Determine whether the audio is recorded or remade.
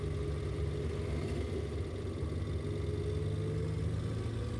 recorded